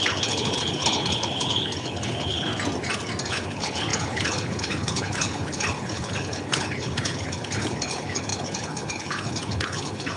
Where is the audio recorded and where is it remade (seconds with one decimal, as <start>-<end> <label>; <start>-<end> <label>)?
0.0-2.5 remade; 2.5-3.3 recorded; 3.3-10.2 remade